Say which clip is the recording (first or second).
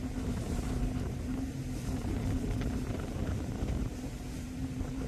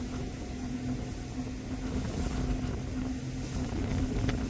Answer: second